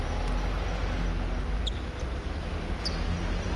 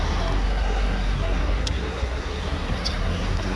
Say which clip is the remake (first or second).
second